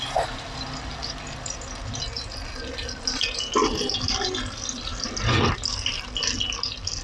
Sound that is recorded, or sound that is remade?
recorded